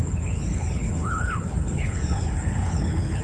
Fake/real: fake